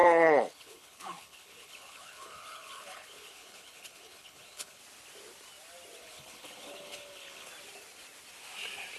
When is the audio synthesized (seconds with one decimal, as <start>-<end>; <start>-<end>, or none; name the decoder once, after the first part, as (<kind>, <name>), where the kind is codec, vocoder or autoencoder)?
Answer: 0.0-4.8 (codec, HILCodec); 6.0-7.5